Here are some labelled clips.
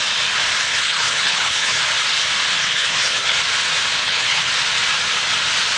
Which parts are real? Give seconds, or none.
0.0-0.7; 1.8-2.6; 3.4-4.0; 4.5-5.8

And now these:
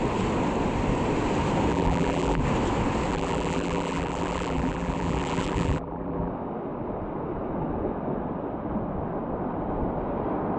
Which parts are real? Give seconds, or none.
0.0-1.7; 2.4-3.1; 6.3-10.6

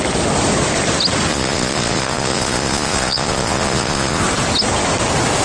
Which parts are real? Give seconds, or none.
0.0-1.3; 4.2-5.4

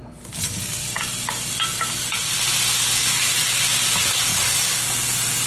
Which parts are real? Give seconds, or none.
0.0-5.5

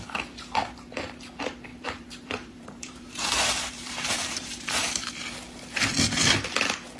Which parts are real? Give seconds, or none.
0.0-1.7; 5.1-7.0